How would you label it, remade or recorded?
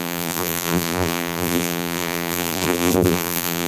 remade